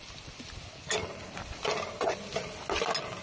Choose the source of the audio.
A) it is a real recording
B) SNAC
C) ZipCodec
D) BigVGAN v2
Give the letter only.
A